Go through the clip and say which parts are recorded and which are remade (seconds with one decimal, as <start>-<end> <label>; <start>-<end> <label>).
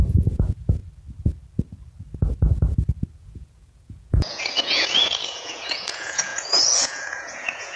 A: 0.0-0.8 remade; 0.8-3.2 recorded; 3.2-7.8 remade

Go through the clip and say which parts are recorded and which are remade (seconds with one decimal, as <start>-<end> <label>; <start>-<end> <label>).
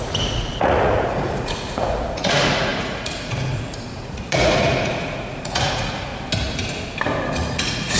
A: 0.0-6.1 remade; 6.1-7.3 recorded; 7.3-8.0 remade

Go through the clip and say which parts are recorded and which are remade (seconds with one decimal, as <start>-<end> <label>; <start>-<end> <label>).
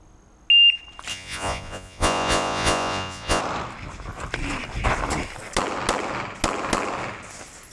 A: 0.0-1.1 recorded; 1.1-3.4 remade; 3.4-7.7 recorded